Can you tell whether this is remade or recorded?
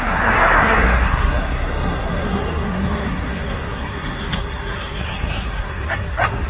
remade